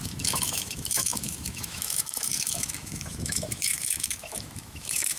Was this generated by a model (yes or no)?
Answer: yes